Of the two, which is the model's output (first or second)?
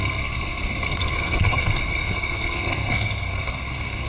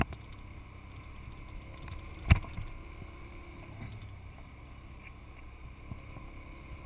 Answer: first